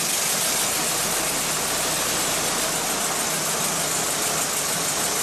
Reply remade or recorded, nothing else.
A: recorded